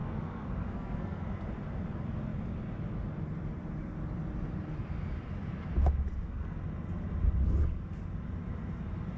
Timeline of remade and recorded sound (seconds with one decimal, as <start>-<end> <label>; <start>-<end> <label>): 0.0-1.3 remade; 1.3-6.1 recorded; 6.1-6.6 remade; 6.6-9.2 recorded